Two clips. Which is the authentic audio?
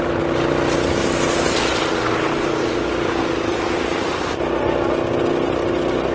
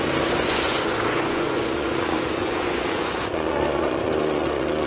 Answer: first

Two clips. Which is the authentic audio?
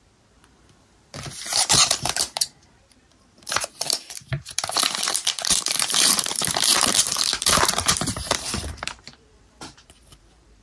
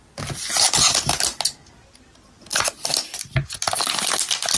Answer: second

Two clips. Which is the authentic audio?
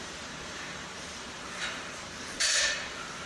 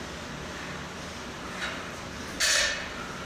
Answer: second